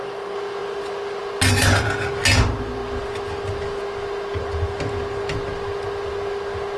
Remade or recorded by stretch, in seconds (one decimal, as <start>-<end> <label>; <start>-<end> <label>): 0.0-6.8 recorded